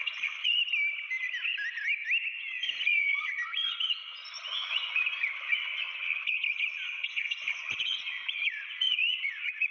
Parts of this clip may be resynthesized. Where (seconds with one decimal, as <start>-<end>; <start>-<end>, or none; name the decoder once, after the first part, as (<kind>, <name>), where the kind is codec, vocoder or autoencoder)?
0.0-0.6 (vocoder, Vocos); 2.6-9.7